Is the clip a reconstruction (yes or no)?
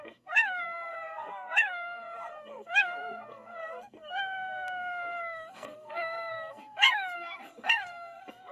yes